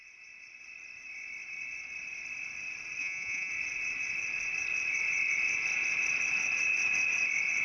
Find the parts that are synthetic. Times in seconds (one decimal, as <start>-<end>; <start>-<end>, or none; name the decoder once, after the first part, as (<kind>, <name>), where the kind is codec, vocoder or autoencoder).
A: 3.0-3.5 (vocoder, Vocos)